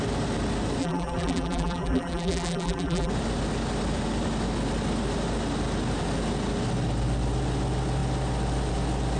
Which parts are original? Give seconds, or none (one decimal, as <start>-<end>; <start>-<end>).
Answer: 0.0-0.8; 3.1-9.2